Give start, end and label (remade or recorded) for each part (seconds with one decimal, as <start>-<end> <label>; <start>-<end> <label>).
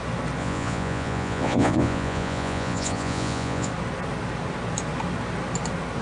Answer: 0.0-0.4 recorded; 0.4-3.7 remade; 3.7-6.0 recorded